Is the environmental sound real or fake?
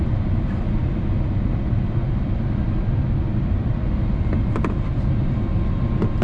real